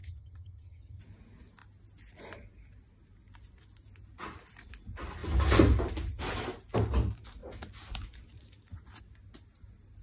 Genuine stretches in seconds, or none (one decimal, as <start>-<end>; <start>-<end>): 1.0-10.0